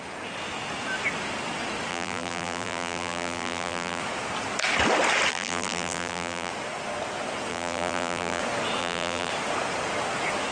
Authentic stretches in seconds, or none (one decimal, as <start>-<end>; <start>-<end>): 0.0-1.9; 4.0-5.3; 6.5-7.5; 8.4-8.8; 9.3-10.5